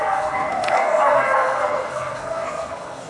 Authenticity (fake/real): fake